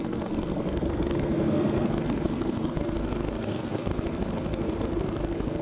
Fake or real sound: fake